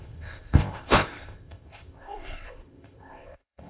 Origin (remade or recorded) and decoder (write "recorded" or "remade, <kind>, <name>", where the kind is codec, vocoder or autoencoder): remade, codec, ZipCodec